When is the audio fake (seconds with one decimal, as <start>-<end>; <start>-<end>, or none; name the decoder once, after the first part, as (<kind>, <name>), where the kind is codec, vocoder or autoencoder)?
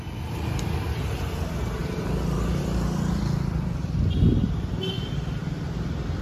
none